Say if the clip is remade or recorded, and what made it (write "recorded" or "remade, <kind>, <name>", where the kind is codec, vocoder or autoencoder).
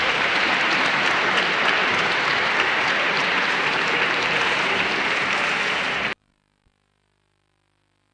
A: remade, vocoder, BigVGAN v2